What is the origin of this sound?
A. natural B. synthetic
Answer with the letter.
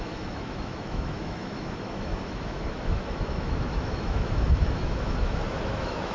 B